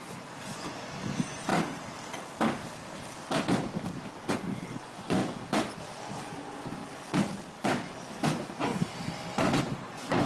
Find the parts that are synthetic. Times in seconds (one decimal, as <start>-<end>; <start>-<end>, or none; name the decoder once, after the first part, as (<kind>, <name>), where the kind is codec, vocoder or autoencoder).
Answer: 0.0-1.5 (vocoder, Vocos); 4.3-6.8; 7.6-8.7; 9.6-10.3